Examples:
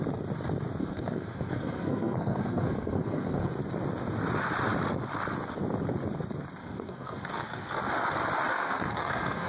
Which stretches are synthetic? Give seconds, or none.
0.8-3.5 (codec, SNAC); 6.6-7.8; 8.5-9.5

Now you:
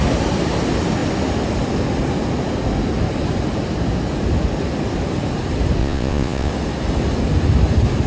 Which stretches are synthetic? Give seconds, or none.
5.8-6.5 (vocoder, Vocos)

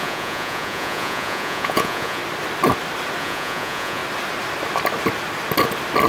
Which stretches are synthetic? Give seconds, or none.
0.0-2.2 (vocoder, Vocos); 3.2-4.0

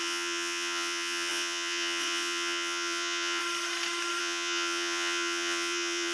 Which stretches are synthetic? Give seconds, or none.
0.0-3.4 (vocoder, Vocos); 4.2-6.1

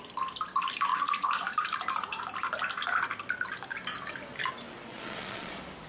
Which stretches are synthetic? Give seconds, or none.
4.9-5.5 (vocoder, Vocos)

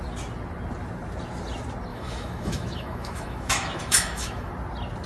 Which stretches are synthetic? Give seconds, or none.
1.9-4.5 (autoencoder, DAC-VAE)